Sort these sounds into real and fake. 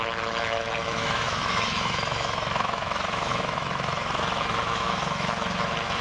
fake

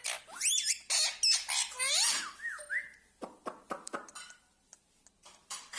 real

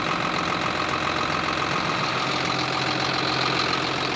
real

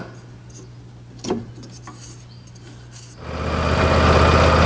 real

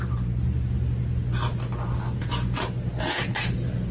real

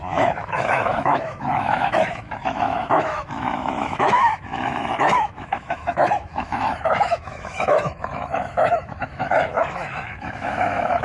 fake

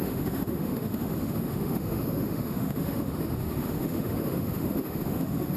fake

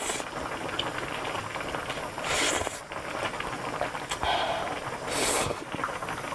real